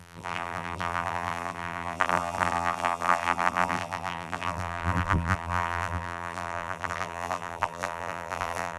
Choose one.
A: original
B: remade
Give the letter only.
B